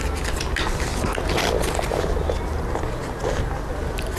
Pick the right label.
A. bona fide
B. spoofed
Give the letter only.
A